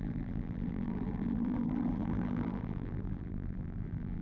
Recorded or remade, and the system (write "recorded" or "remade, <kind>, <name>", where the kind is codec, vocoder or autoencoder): remade, vocoder, BigVGAN v2